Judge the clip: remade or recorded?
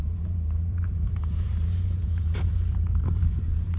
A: remade